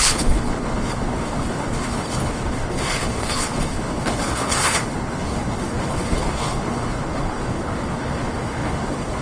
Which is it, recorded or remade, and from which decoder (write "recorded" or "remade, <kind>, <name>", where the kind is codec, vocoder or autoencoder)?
remade, codec, HILCodec